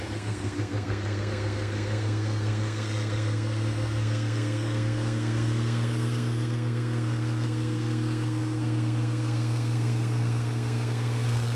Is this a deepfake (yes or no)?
yes